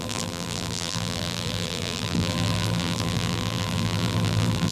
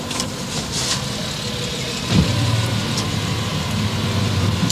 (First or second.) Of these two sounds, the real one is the second